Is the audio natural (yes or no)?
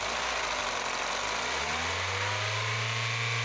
yes